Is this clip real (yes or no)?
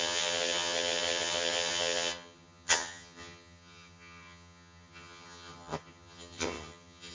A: no